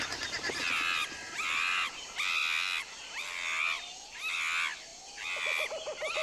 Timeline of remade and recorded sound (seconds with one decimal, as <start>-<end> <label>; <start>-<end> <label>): 0.0-6.2 recorded